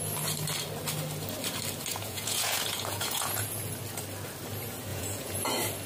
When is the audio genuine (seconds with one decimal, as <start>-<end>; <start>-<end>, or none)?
0.0-1.9; 3.7-4.9; 5.5-5.9